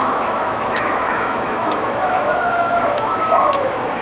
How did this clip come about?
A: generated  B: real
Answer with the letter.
A